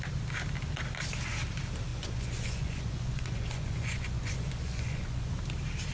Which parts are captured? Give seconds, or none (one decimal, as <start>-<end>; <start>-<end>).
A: 0.0-1.9; 5.3-5.9